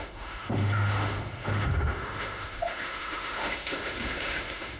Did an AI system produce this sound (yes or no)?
yes